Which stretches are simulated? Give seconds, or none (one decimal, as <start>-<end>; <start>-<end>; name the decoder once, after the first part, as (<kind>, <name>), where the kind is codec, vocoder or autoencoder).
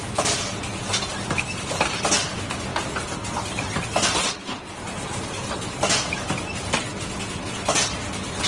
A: none